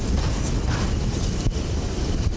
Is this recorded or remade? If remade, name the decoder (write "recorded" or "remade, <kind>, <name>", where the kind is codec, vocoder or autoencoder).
recorded